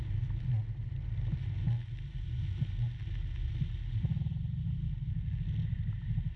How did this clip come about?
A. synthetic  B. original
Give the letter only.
B